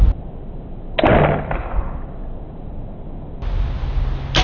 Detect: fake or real real